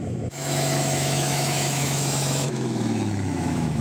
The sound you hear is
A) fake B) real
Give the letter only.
A